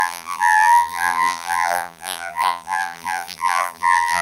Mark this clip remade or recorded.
remade